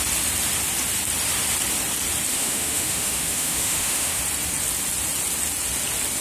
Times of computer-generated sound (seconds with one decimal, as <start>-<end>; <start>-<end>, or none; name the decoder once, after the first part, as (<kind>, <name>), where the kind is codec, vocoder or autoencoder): 2.3-4.2 (autoencoder, DAC-VAE)